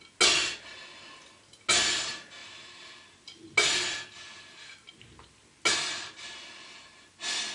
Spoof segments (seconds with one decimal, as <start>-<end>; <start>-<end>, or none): none